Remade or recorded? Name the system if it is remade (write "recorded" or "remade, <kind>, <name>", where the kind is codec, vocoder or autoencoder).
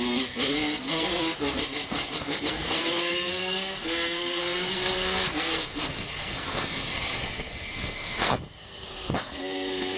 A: remade, codec, SNAC